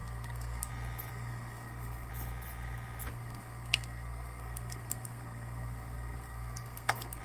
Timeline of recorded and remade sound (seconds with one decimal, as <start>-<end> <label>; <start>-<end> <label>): 0.0-0.7 remade; 0.7-1.1 recorded; 1.1-2.1 remade; 2.1-3.1 recorded; 3.1-7.2 remade